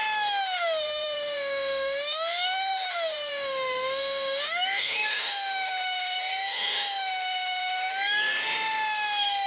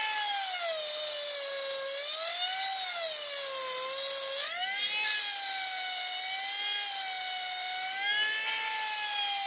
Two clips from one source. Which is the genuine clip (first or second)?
second